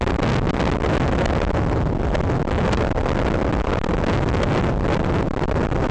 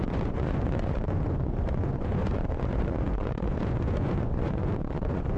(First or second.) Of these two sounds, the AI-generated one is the second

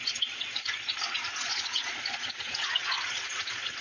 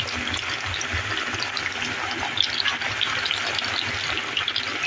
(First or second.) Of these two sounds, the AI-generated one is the first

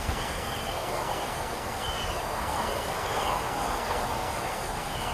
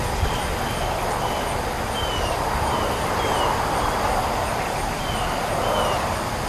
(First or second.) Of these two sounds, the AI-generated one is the first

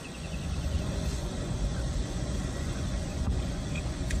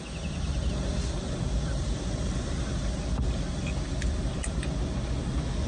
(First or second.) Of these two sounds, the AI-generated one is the first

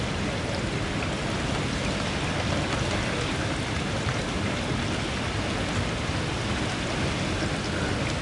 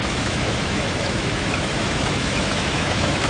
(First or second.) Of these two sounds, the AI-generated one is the second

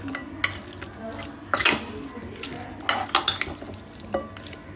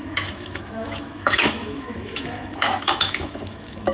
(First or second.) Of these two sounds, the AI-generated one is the second